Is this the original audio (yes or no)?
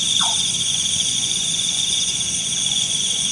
no